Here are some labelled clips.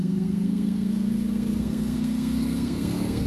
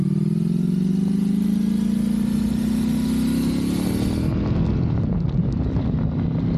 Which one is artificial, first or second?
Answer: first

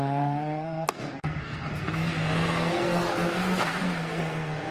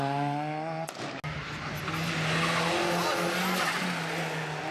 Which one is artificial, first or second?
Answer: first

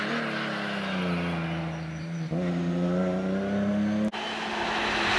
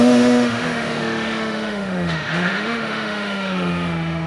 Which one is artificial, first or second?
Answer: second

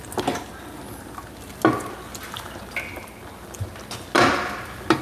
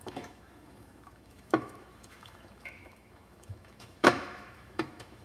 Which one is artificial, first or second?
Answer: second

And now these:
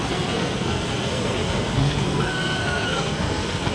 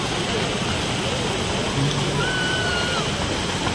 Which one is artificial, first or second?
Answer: first